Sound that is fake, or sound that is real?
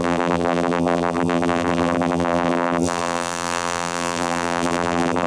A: fake